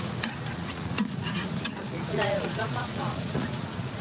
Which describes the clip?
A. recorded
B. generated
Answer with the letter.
B